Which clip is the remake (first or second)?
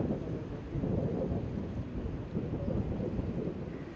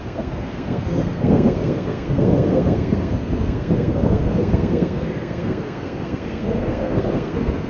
second